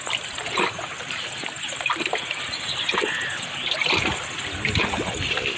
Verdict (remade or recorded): recorded